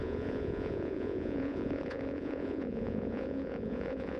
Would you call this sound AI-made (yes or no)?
yes